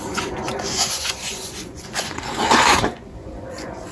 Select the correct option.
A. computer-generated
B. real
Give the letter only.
A